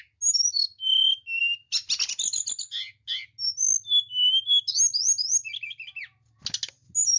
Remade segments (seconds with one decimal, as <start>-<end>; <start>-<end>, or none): none